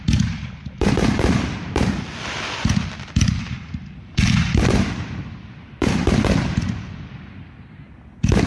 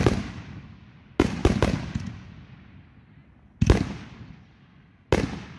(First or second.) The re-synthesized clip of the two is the first